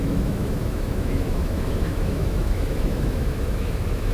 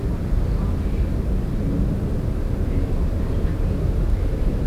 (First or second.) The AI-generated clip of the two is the first